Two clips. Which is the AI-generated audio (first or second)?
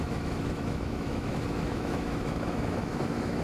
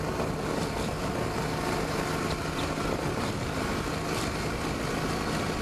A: first